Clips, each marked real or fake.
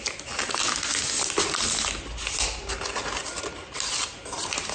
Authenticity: real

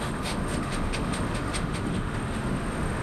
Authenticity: fake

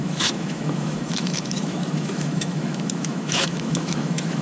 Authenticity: fake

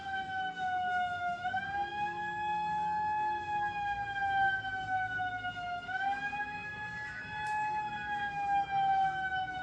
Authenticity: fake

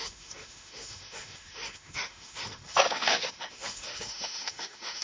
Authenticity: fake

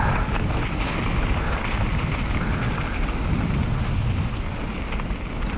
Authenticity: real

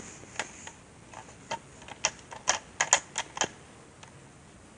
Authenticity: real